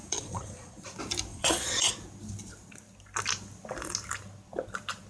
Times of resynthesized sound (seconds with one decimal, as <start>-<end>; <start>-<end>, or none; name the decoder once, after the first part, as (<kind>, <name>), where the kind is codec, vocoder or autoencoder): 0.0-0.8 (vocoder, Vocos); 1.3-1.9